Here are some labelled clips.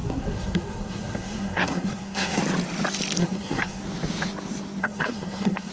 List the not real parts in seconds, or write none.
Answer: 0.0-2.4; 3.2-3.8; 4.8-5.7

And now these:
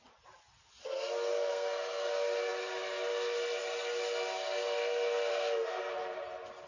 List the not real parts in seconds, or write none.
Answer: 1.5-2.1; 5.3-5.9